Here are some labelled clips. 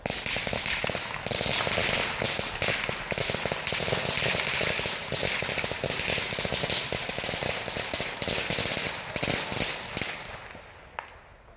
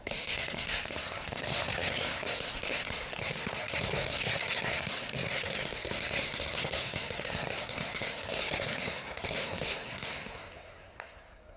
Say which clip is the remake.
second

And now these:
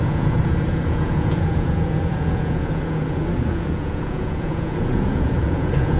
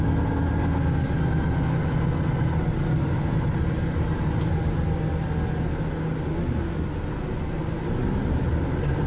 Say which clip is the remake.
first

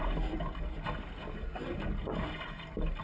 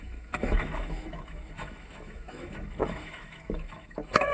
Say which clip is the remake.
second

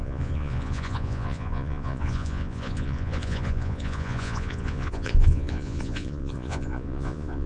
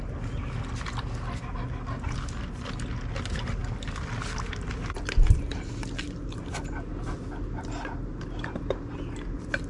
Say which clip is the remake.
first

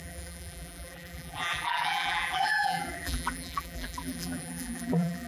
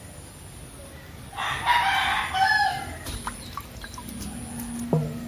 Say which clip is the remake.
first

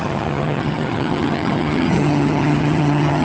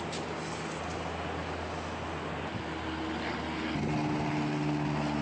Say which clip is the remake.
first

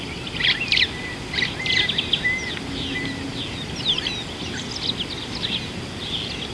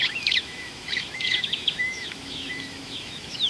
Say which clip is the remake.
second